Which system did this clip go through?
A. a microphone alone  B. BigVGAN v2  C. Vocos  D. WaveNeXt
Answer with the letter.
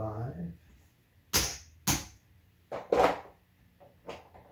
A